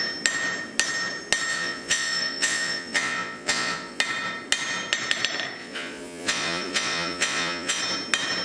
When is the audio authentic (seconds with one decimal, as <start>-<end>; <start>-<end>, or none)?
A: 0.0-1.5; 4.0-5.6; 7.8-8.4